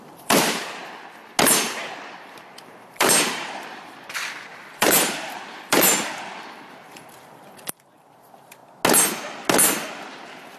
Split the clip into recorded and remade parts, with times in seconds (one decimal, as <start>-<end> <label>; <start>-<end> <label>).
0.0-0.8 remade; 0.8-1.5 recorded; 1.5-8.6 remade; 8.6-9.9 recorded; 9.9-10.6 remade